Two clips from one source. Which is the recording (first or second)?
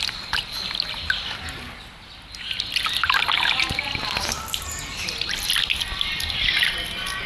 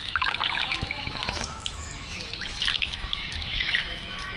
first